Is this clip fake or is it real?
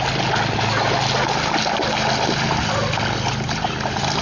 real